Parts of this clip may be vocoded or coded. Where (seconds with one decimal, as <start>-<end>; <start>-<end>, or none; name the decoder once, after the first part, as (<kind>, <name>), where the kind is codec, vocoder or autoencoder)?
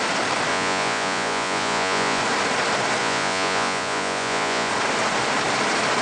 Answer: 0.5-2.2 (vocoder, Vocos); 3.0-4.7